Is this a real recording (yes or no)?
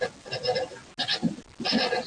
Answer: yes